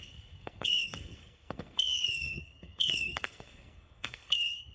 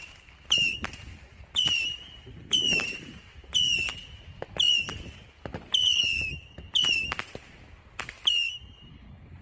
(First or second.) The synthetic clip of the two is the first